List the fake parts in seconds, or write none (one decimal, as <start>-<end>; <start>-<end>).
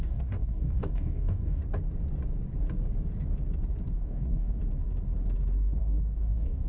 0.0-1.6; 4.0-4.6; 5.8-6.7